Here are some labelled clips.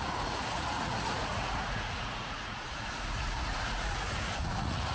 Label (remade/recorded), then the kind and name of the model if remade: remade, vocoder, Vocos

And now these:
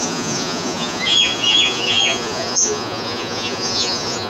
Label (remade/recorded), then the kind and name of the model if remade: remade, vocoder, Vocos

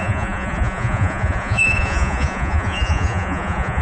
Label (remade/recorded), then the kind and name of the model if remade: remade, vocoder, Vocos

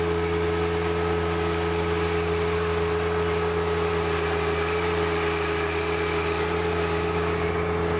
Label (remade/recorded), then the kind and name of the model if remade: recorded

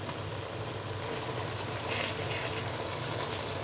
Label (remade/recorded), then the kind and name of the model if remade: recorded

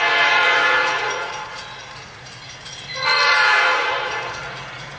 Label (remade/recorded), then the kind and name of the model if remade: remade, vocoder, Vocos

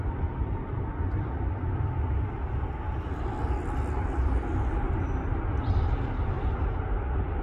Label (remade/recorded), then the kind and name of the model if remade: recorded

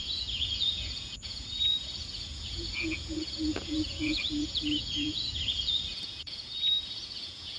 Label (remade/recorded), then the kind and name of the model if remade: remade, vocoder, Vocos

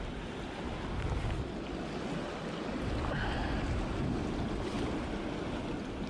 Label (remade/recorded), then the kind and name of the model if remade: recorded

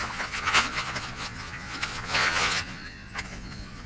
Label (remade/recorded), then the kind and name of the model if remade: remade, vocoder, Vocos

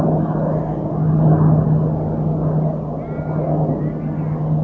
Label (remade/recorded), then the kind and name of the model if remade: recorded